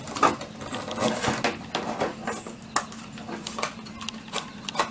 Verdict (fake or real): real